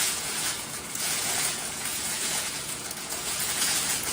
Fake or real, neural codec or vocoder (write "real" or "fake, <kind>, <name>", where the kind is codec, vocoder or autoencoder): fake, vocoder, Vocos